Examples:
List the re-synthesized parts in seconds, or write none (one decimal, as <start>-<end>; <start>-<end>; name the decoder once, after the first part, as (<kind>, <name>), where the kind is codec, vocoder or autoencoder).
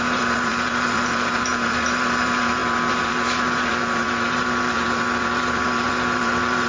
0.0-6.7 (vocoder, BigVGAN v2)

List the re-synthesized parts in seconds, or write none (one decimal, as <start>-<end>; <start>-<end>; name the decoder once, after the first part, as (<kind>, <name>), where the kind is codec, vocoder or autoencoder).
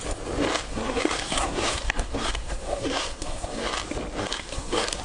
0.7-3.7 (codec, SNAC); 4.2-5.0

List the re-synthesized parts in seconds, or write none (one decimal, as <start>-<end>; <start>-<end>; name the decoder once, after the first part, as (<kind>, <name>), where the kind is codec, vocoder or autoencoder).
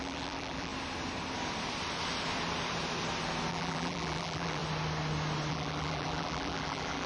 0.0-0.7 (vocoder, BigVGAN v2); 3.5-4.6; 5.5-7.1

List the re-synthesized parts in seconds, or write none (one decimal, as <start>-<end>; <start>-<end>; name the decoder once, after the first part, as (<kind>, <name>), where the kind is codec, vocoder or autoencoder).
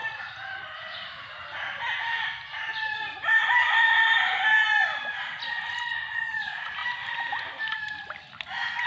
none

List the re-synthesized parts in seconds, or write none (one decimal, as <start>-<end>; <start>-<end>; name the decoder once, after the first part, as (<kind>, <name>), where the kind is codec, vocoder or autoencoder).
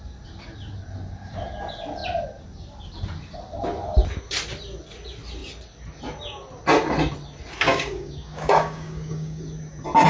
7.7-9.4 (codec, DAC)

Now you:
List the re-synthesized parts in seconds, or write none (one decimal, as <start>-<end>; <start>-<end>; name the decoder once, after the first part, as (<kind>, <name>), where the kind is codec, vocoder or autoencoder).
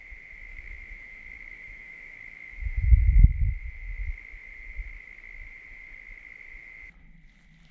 0.5-2.9 (autoencoder, DAC-VAE)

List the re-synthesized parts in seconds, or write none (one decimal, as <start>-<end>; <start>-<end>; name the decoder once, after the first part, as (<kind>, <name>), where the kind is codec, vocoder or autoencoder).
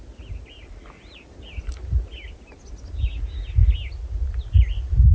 none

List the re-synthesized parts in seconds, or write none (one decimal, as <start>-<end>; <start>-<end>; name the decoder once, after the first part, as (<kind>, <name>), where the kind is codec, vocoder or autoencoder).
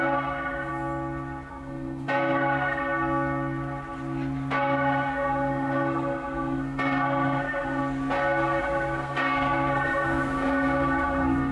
0.0-0.7 (codec, SNAC); 1.5-2.8; 4.6-7.8; 8.6-11.5